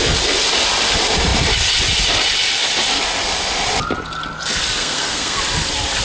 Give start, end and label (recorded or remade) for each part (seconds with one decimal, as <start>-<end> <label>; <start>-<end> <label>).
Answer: 0.0-4.8 recorded; 4.8-5.4 remade; 5.4-6.0 recorded